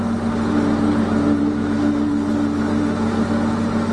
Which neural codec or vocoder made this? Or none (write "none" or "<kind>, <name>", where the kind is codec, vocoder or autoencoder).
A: none